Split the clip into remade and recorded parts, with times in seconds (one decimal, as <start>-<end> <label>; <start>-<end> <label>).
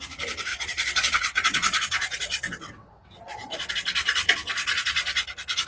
0.0-0.5 recorded; 0.5-3.7 remade; 3.7-5.7 recorded